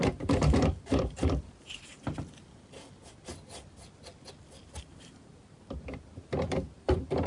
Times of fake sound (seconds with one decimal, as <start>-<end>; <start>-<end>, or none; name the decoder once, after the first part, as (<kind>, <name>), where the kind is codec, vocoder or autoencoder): 0.0-1.9 (vocoder, BigVGAN v2); 4.8-7.3